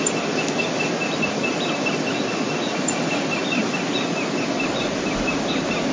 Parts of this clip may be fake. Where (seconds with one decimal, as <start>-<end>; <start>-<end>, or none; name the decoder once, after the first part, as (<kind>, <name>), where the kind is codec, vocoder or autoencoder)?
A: none

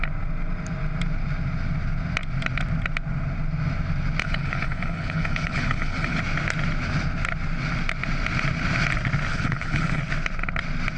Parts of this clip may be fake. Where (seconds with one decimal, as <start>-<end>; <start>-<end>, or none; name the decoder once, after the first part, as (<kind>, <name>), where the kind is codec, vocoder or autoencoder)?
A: 4.2-6.2 (codec, HILCodec); 9.3-10.0